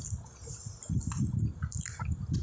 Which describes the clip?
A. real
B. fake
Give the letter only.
A